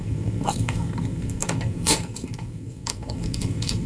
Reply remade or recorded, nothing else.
remade